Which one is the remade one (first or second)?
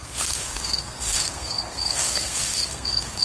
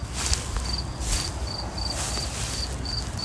first